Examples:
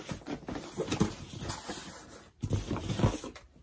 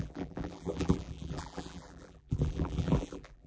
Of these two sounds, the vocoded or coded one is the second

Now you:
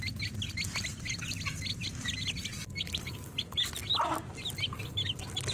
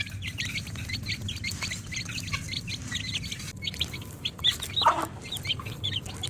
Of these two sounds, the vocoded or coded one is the second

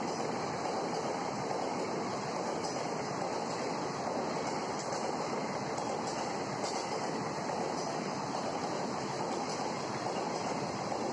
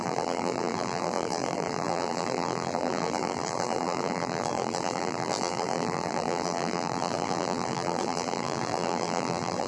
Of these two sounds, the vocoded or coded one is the second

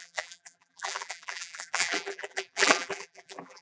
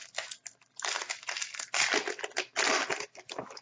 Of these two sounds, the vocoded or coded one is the first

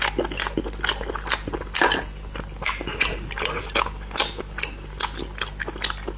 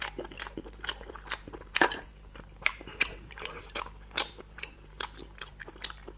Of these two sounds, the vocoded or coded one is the second